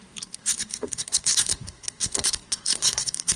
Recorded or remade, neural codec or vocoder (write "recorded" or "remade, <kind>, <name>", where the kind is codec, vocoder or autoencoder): remade, codec, SNAC